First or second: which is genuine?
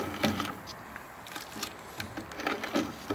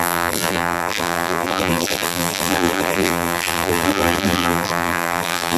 first